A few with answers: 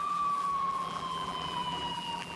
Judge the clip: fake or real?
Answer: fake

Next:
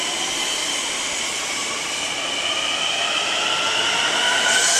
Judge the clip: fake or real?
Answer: real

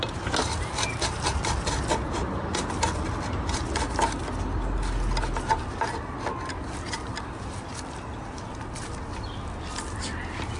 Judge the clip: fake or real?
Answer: real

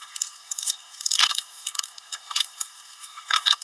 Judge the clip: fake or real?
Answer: fake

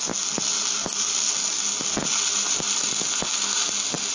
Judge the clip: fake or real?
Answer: real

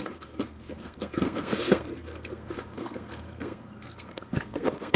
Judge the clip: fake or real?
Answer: fake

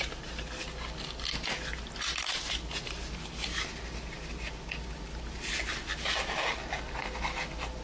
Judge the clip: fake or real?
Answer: real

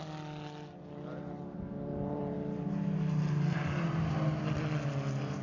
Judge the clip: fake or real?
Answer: real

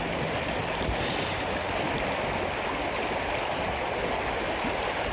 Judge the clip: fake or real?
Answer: real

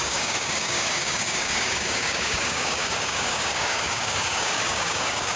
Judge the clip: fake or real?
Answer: fake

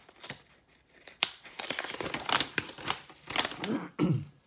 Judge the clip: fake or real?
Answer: fake